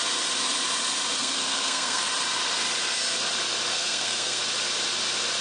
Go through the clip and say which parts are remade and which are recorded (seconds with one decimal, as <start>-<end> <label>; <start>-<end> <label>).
0.0-1.2 recorded; 1.2-2.0 remade; 2.0-3.7 recorded; 3.7-4.4 remade; 4.4-5.4 recorded